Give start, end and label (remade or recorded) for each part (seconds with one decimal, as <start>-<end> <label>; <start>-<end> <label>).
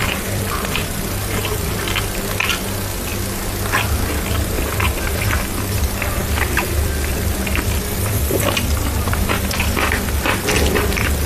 0.0-0.8 remade; 0.8-6.2 recorded; 6.2-10.2 remade; 10.2-11.3 recorded